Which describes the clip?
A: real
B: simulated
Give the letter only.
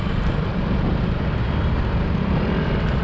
A